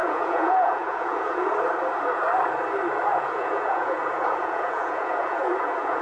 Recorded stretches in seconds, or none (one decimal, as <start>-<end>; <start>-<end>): 1.5-3.1